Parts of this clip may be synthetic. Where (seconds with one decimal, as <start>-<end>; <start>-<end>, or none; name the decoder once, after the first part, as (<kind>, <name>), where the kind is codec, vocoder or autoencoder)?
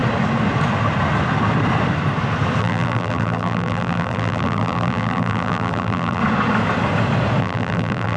2.6-6.2 (vocoder, BigVGAN v2); 7.4-8.2